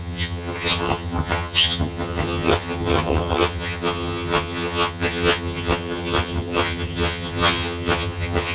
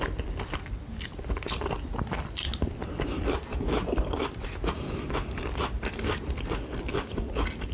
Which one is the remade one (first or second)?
first